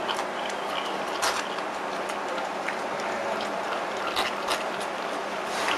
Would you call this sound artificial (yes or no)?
no